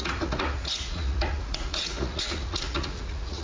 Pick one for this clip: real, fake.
fake